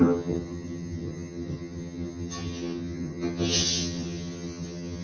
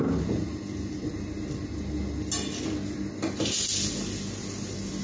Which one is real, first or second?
second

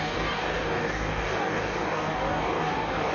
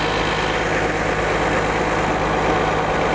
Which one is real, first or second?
second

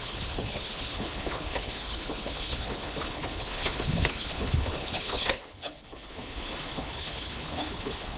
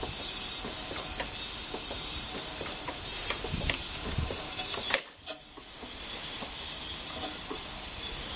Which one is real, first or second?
second